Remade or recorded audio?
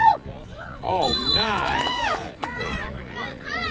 remade